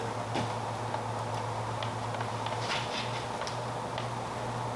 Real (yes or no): yes